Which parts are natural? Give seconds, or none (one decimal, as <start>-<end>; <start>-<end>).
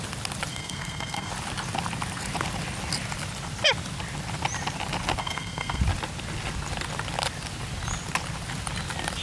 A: 0.0-0.5; 1.3-5.2; 5.8-9.2